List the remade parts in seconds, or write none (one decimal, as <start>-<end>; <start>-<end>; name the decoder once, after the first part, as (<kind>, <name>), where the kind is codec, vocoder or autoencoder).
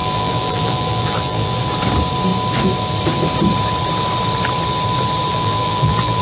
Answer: 0.0-1.6 (vocoder, BigVGAN v2); 5.3-6.2